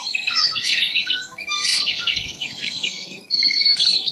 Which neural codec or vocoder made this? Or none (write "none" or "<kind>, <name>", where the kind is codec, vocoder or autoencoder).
codec, SNAC